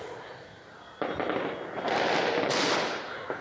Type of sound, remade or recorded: recorded